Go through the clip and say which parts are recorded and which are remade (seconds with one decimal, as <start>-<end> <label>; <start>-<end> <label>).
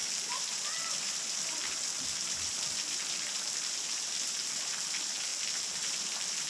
0.0-5.3 remade; 5.3-6.0 recorded; 6.0-6.5 remade